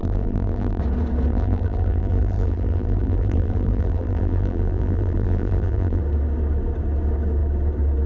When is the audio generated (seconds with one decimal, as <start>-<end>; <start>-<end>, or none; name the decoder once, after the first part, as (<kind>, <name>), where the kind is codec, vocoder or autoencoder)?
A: 0.0-0.8 (vocoder, BigVGAN v2); 1.3-6.0